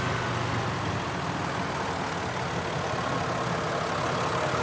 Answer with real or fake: real